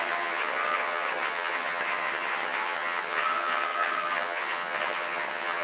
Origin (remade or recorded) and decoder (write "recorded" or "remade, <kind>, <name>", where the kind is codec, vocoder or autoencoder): remade, vocoder, HiFi-GAN